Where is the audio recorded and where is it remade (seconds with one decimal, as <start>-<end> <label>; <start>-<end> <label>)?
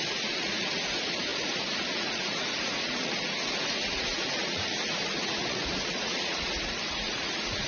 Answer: 0.0-7.7 remade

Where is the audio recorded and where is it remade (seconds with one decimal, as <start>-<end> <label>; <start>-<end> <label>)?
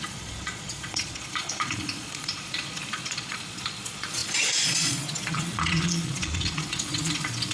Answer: 0.0-7.5 remade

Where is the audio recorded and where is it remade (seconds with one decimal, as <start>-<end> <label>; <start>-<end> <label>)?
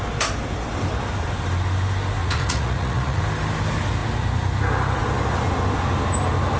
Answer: 0.0-2.2 recorded; 2.2-3.2 remade; 3.2-6.6 recorded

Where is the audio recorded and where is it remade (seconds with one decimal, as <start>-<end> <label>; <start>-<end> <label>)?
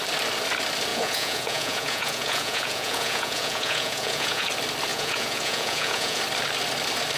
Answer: 0.0-0.9 recorded; 0.9-4.5 remade; 4.5-4.9 recorded; 4.9-6.2 remade; 6.2-7.2 recorded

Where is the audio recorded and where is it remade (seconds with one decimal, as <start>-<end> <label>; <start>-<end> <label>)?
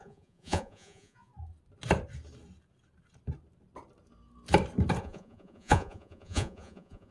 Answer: 0.0-1.3 remade; 1.3-5.0 recorded; 5.0-7.1 remade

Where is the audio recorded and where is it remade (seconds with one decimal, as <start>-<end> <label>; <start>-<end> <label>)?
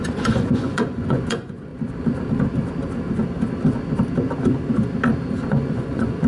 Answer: 0.0-1.7 remade; 1.7-5.5 recorded; 5.5-6.3 remade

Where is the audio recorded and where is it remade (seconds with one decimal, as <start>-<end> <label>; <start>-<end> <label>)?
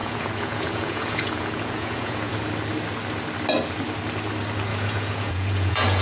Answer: 0.0-2.3 remade; 2.3-4.7 recorded; 4.7-6.0 remade